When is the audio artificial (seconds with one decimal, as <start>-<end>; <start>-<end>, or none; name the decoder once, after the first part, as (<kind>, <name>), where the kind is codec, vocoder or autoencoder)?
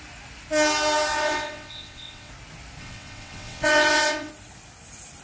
1.1-2.3 (vocoder, WaveNeXt); 2.8-4.3